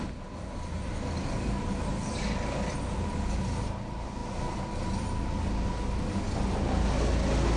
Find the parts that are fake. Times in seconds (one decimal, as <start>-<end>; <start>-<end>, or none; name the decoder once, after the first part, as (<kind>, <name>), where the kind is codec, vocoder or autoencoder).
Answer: none